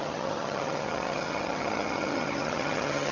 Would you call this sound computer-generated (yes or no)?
yes